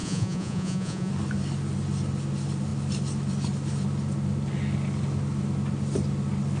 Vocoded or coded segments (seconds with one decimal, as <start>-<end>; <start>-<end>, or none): 0.0-1.1